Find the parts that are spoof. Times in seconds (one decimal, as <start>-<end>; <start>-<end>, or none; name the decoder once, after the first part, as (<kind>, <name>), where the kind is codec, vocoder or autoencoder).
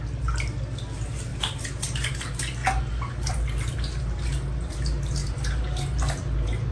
none